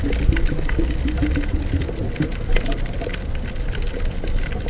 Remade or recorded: recorded